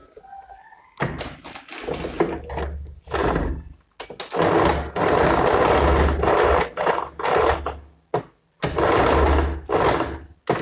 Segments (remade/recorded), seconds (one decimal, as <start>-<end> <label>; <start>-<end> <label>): 0.0-10.6 recorded